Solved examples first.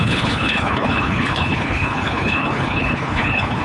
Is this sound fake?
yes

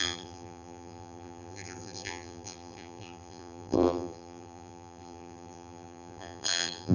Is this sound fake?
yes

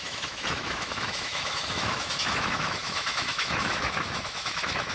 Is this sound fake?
yes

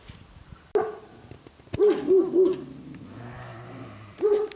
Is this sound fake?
no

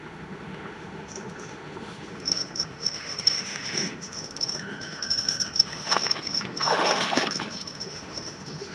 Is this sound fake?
yes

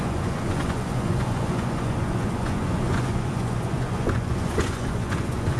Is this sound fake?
yes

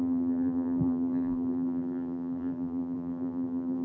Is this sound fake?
yes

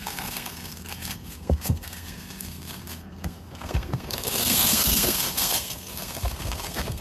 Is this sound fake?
yes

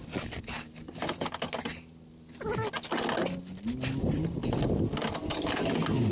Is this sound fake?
no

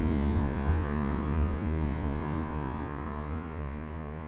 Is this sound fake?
yes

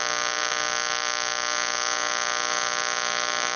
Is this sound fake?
yes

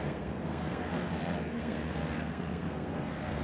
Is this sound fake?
yes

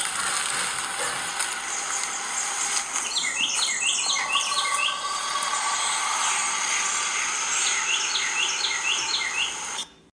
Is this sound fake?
no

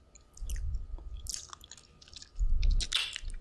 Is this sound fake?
no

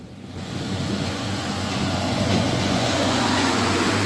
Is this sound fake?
yes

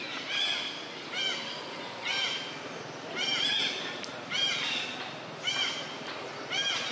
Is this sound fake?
no